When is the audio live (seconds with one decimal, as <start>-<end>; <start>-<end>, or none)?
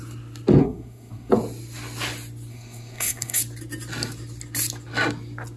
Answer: 0.0-0.6; 1.3-2.5; 3.4-5.6